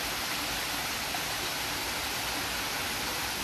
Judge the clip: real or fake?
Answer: real